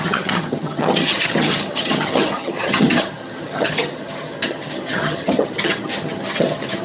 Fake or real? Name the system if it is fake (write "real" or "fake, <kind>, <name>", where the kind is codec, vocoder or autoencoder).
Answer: fake, vocoder, HiFi-GAN